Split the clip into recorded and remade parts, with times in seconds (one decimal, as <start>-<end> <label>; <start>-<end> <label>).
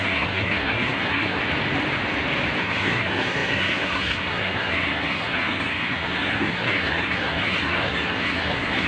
0.0-1.4 remade; 1.4-2.6 recorded; 2.6-8.9 remade